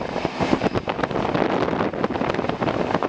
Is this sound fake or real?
real